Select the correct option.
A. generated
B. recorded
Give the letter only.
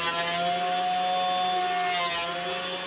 B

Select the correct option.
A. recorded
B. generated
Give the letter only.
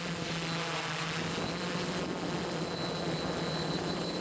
A